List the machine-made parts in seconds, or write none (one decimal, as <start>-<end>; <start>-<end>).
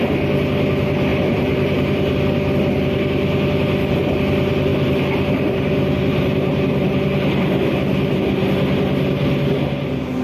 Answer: 1.1-2.1; 4.7-7.7